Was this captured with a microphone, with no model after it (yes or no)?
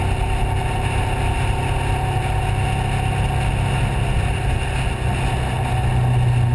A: yes